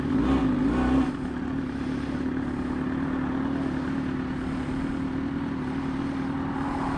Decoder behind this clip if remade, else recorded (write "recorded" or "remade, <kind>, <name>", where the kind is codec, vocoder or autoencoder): recorded